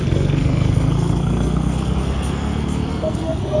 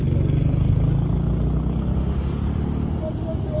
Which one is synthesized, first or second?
first